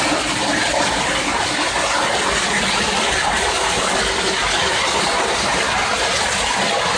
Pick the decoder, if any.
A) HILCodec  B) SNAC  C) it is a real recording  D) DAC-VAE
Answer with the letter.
C